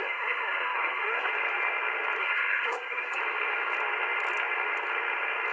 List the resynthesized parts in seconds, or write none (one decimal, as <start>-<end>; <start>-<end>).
0.0-1.3; 2.2-3.2